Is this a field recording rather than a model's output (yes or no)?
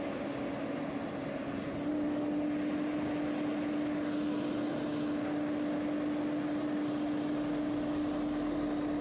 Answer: yes